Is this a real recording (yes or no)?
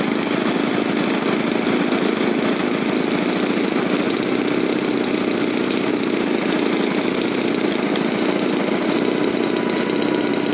yes